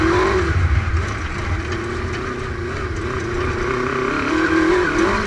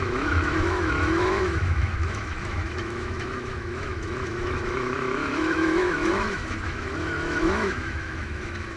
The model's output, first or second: second